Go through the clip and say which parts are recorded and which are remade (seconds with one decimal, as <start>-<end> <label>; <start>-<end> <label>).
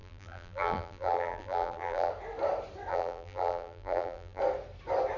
0.0-2.1 remade; 2.1-2.9 recorded; 2.9-4.4 remade; 4.4-5.2 recorded